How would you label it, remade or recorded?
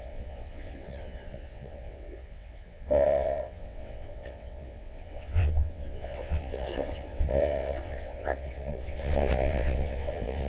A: remade